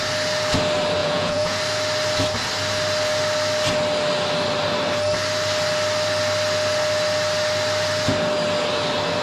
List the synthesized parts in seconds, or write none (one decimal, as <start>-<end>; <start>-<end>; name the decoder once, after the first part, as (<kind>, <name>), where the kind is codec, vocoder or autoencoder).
1.0-1.6 (vocoder, Vocos)